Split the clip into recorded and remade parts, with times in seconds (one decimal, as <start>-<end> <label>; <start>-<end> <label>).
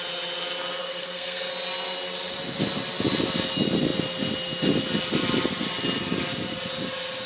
0.0-0.8 recorded; 0.8-1.5 remade; 1.5-7.3 recorded